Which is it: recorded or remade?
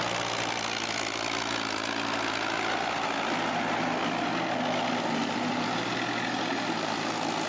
recorded